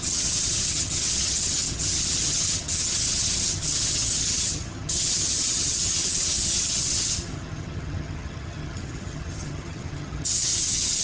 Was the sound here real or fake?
fake